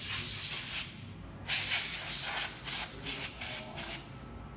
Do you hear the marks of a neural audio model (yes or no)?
no